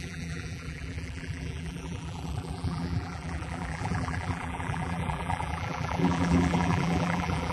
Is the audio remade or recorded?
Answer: remade